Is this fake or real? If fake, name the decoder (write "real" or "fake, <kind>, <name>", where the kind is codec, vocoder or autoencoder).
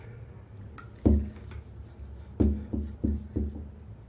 real